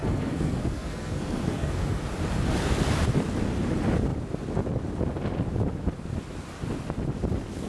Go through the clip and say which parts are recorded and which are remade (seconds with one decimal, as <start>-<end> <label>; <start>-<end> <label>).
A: 0.0-2.0 remade; 2.0-7.7 recorded